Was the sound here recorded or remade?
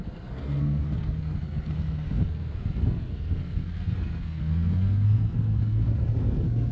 remade